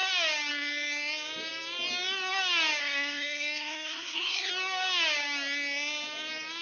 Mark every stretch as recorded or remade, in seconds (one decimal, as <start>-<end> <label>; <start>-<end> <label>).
0.0-2.8 recorded; 2.8-4.5 remade; 4.5-6.6 recorded